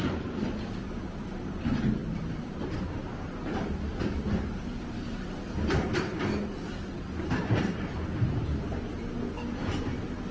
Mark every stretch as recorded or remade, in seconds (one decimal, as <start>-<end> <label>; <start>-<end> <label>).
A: 0.0-10.3 remade